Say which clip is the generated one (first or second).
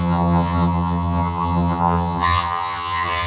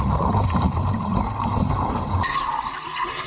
first